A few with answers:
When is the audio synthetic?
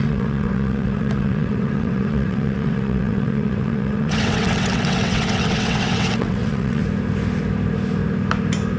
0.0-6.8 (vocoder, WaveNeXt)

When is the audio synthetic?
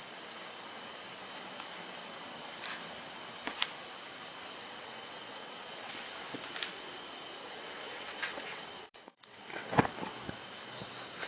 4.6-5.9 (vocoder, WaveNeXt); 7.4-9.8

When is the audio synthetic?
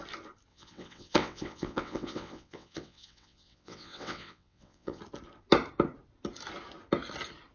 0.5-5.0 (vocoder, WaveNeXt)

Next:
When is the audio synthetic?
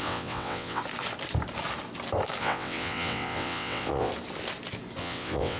0.0-0.8 (vocoder, WaveNeXt); 2.4-4.1; 5.0-5.6